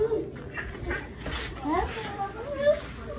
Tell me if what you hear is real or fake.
real